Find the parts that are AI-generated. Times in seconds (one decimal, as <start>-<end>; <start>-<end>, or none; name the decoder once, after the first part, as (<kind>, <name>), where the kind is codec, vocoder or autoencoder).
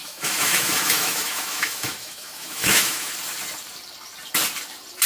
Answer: 0.0-3.1 (autoencoder, DAC-VAE)